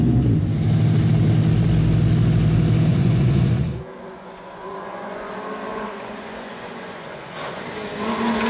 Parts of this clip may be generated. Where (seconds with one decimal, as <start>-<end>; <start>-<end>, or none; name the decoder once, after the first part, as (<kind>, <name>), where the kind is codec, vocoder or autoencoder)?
2.9-5.3 (vocoder, Vocos); 5.7-7.6

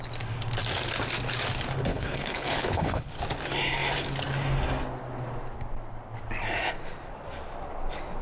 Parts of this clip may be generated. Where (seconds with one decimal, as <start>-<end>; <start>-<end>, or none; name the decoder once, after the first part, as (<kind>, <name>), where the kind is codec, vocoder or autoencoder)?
1.9-3.1 (codec, HILCodec)

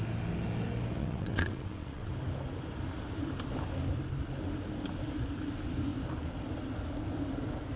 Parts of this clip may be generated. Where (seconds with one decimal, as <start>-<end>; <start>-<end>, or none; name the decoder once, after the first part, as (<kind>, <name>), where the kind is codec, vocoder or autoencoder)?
1.0-2.1 (vocoder, WaveNeXt)

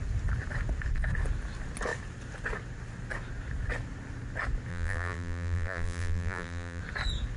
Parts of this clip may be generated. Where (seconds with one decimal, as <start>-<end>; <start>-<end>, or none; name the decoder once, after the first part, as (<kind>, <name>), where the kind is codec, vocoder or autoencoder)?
4.7-6.8 (vocoder, BigVGAN v2)

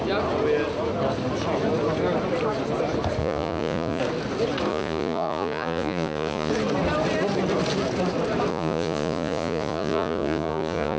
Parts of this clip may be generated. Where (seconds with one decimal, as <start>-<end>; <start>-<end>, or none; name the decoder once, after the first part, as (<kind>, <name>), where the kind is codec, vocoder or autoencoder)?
3.2-4.0 (vocoder, Vocos); 4.7-6.5; 8.5-11.0

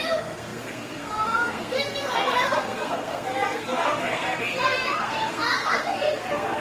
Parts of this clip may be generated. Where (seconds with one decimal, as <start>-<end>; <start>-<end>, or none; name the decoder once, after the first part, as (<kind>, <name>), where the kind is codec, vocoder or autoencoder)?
0.0-6.6 (codec, SNAC)

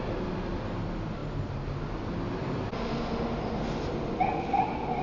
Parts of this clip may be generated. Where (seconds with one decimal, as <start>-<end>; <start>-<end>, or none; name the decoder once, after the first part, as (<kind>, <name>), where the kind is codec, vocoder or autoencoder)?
none

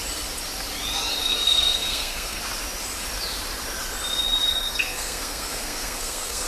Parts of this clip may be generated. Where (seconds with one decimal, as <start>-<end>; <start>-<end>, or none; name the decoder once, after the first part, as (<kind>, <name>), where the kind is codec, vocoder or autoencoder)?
1.2-2.4 (codec, SNAC); 4.5-6.5